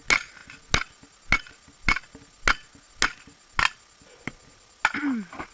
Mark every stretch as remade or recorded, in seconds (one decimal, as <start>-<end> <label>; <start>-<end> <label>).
0.0-5.5 recorded